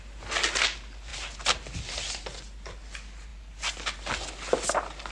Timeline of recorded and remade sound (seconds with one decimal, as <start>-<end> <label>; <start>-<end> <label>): 0.0-5.1 recorded